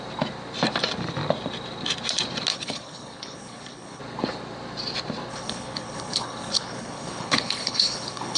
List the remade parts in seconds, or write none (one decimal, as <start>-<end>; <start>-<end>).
2.5-4.0; 5.3-8.4